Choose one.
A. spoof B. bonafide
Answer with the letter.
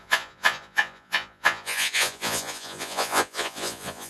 A